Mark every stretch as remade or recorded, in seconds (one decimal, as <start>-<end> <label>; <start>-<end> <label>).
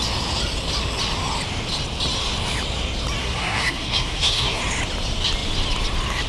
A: 0.0-3.2 recorded; 3.2-4.6 remade; 4.6-6.3 recorded